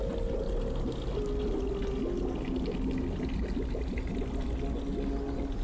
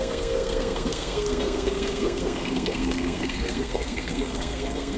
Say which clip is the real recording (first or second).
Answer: first